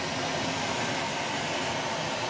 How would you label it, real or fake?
real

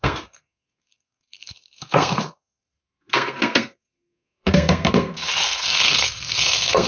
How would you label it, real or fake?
fake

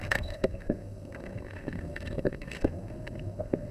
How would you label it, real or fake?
fake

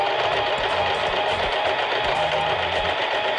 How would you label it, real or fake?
real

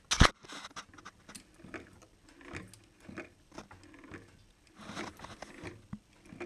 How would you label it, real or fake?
real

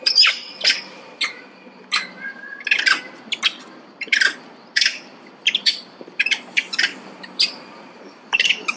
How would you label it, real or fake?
fake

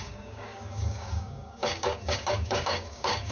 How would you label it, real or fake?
fake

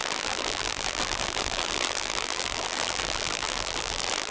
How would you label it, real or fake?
fake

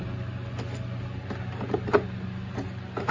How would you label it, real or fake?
real